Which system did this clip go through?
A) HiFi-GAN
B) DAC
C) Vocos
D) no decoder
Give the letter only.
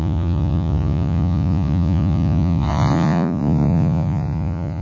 C